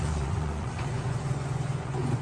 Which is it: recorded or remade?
remade